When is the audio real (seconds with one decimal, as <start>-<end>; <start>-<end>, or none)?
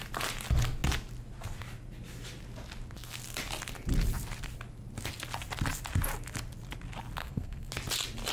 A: 0.0-7.2; 7.7-8.3